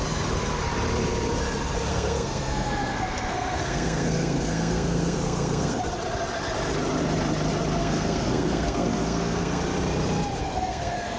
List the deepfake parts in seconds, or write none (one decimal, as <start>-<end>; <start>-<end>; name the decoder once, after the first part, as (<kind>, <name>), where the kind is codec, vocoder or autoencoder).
1.9-5.8 (codec, SNAC); 7.8-9.6; 10.4-11.2